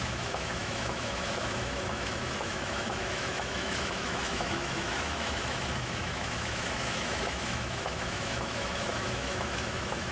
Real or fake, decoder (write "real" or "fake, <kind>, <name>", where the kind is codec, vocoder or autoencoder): fake, autoencoder, DAC-VAE